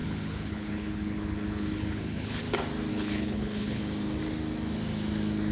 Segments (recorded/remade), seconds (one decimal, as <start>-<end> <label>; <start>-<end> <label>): 0.0-2.4 remade; 2.4-2.9 recorded; 2.9-3.8 remade; 3.8-5.5 recorded